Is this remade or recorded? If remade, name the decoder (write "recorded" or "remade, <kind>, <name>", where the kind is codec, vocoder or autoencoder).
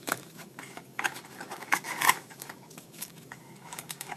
remade, codec, DAC